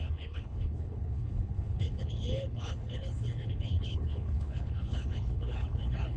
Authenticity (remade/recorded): remade